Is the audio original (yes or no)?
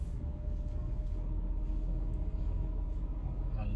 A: no